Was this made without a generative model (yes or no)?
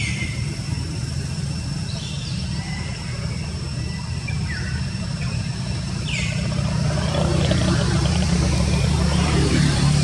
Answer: no